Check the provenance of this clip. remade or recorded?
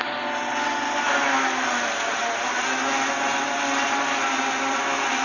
recorded